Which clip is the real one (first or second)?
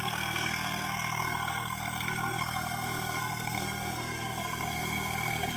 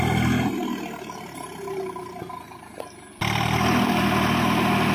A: second